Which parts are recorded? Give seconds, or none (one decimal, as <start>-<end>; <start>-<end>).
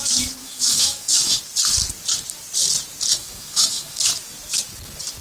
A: 0.0-0.4; 1.4-3.1; 4.0-5.2